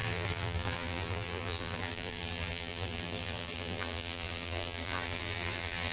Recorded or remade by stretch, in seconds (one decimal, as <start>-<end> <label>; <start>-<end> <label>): 0.0-5.9 remade